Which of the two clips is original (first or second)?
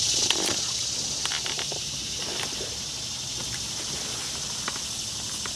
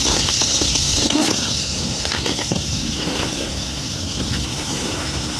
first